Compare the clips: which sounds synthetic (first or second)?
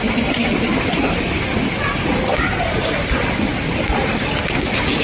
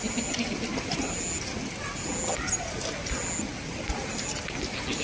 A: first